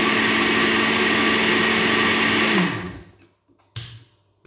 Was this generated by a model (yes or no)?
no